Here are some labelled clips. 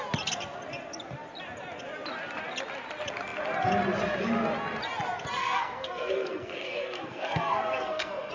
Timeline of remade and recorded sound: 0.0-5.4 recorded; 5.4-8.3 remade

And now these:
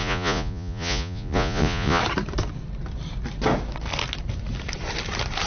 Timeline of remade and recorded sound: 0.0-2.0 remade; 2.0-5.5 recorded

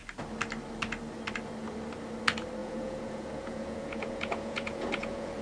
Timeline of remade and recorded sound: 0.0-2.6 recorded; 2.6-5.4 remade

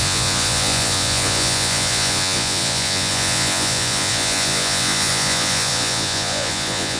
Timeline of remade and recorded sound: 0.0-7.0 remade

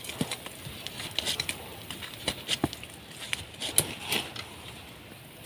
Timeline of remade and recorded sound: 0.0-5.5 recorded

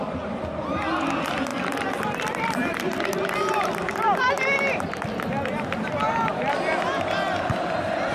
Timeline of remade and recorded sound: 0.0-8.1 recorded